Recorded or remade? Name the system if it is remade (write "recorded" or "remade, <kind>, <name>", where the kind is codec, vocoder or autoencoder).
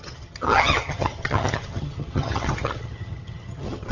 remade, vocoder, HiFi-GAN